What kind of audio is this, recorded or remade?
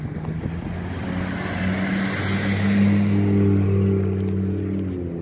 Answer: recorded